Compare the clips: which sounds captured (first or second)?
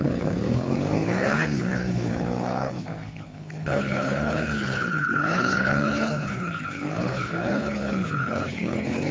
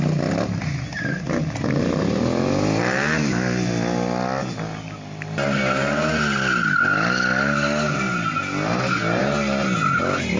second